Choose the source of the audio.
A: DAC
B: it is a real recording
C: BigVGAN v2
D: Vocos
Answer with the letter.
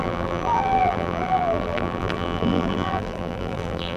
C